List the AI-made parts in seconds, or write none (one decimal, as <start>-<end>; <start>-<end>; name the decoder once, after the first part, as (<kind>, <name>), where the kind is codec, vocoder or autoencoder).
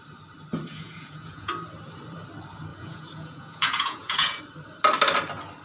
0.7-1.5 (vocoder, Vocos); 2.7-4.4